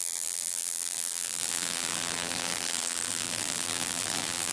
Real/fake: fake